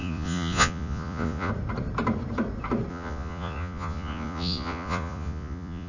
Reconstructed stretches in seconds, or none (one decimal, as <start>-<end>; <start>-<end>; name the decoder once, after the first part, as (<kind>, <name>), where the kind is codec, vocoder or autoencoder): 0.0-1.5 (vocoder, Vocos); 2.9-5.9